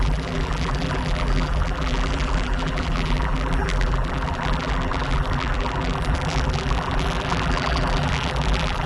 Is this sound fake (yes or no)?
yes